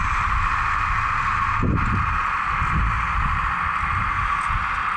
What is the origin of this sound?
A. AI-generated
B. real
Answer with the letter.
B